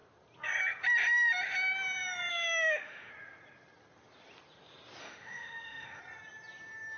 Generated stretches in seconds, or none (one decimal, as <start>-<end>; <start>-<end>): 2.3-3.1; 5.0-6.0